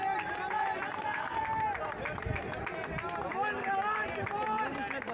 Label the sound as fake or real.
real